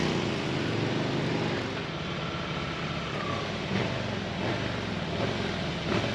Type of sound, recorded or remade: recorded